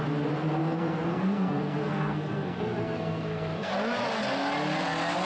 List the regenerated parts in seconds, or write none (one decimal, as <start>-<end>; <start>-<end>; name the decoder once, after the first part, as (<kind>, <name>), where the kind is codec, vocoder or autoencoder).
0.6-3.7 (codec, SNAC)